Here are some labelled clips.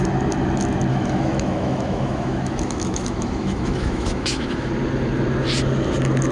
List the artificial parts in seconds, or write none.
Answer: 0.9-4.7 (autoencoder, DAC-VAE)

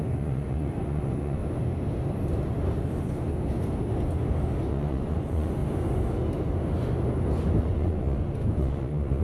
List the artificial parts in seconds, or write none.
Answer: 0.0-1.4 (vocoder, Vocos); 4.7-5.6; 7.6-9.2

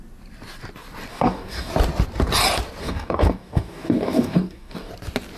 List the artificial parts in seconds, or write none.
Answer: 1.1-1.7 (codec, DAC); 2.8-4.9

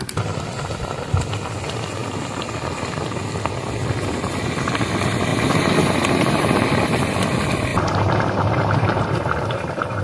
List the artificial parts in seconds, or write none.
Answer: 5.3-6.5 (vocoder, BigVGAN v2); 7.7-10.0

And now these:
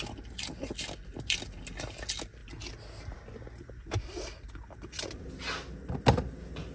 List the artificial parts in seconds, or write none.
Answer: none

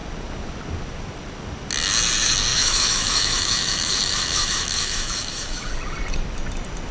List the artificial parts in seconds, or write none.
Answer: 2.5-5.7 (autoencoder, DAC-VAE)

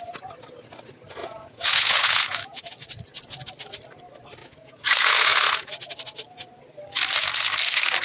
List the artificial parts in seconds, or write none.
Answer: 1.2-2.7 (vocoder, Vocos); 4.4-5.7

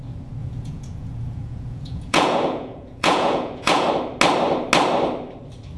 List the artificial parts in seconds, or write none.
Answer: 0.4-3.9 (vocoder, Vocos)